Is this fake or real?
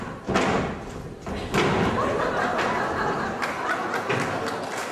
real